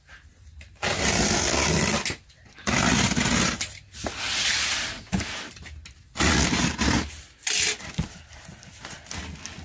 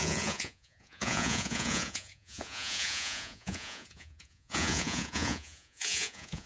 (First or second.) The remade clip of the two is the second